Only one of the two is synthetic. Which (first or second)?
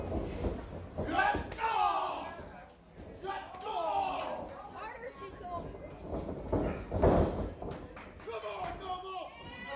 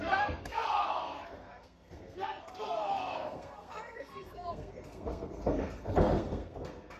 second